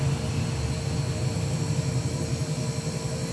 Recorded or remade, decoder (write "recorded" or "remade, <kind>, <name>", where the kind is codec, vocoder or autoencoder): recorded